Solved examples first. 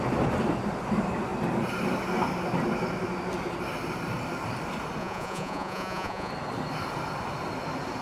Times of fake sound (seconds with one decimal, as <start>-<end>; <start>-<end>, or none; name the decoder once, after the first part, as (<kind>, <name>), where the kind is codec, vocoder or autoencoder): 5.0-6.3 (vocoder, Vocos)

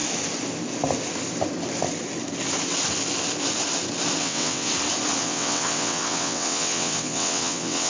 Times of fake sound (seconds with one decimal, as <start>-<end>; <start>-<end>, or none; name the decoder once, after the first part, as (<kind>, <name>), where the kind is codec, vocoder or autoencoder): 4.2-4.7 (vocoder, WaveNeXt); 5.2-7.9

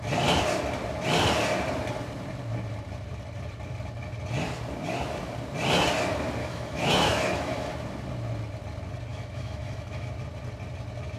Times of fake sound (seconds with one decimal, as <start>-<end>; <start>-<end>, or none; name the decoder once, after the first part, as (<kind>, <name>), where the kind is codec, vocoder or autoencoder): 6.4-7.7 (autoencoder, DAC-VAE); 9.1-10.1

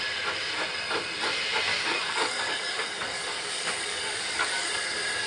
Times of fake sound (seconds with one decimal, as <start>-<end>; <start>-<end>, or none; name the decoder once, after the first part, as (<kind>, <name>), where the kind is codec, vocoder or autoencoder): 1.7-4.7 (codec, DAC)

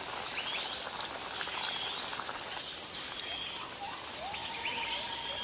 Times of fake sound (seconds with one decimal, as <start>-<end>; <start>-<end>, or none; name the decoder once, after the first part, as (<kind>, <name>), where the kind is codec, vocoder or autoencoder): none

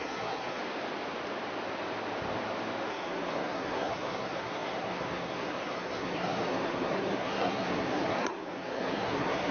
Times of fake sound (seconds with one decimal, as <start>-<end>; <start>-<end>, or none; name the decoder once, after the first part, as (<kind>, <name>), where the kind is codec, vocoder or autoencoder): 0.0-0.6 (codec, SNAC); 2.9-9.5